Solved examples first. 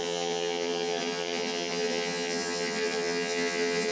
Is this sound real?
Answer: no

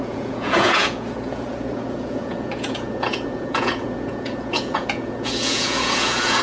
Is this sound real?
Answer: no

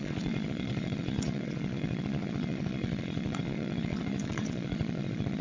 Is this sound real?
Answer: no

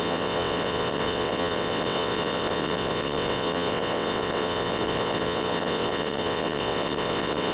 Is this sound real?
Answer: no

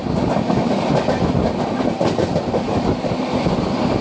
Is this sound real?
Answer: yes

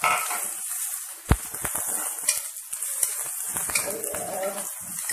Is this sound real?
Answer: yes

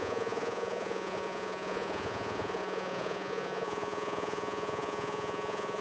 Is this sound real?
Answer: no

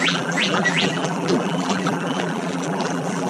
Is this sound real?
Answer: no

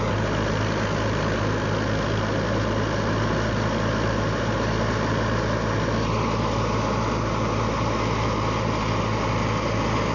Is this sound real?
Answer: yes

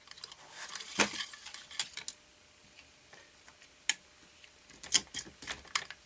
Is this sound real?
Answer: yes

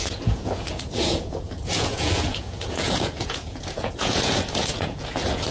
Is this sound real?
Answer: no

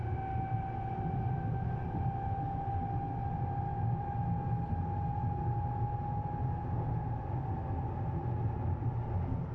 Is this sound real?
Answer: yes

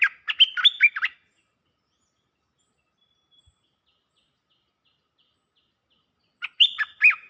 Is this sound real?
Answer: yes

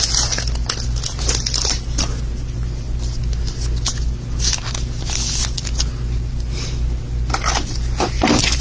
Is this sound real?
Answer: yes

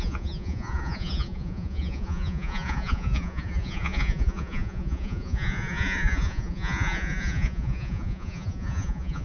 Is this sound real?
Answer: no